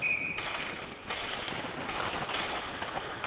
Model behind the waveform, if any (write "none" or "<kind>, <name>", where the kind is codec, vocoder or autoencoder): none